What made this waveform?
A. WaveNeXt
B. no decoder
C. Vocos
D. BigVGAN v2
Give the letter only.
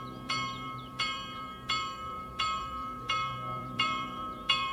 D